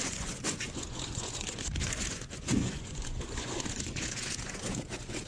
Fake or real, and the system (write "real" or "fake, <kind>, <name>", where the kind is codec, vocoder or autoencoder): fake, vocoder, Vocos